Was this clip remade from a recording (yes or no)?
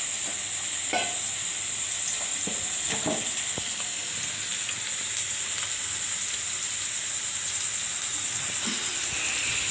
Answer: no